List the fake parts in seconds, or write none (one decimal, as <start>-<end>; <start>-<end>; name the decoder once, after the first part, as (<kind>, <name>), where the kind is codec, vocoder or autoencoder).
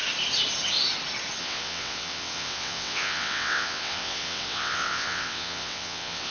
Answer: 1.4-6.3 (vocoder, WaveNeXt)